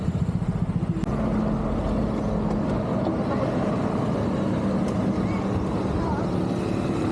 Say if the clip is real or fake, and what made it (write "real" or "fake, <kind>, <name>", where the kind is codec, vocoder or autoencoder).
real